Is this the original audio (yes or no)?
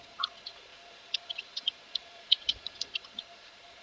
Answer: no